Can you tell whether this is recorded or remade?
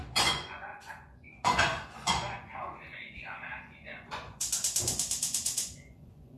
remade